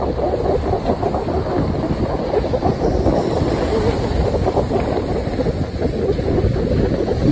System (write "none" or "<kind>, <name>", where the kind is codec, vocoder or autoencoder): none